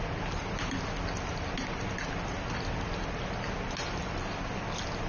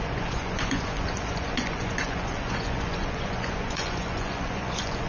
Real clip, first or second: first